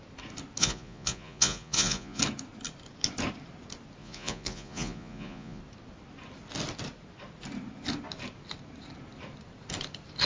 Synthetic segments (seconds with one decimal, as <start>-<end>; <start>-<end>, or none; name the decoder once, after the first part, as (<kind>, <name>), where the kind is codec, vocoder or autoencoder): 0.6-2.2 (vocoder, Vocos); 4.0-5.6